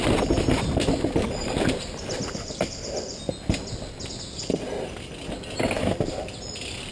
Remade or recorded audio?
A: recorded